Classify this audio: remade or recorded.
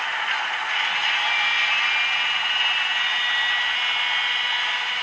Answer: recorded